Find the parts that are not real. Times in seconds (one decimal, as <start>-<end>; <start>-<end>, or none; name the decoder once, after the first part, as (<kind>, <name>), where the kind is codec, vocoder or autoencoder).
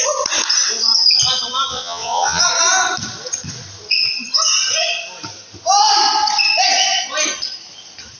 1.7-2.4 (vocoder, Vocos)